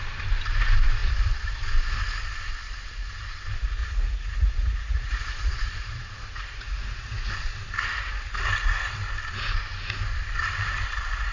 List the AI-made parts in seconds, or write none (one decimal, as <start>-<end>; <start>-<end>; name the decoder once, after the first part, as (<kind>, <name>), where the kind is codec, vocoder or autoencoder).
3.8-7.3 (vocoder, Vocos)